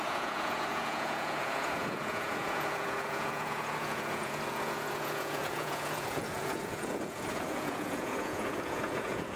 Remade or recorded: remade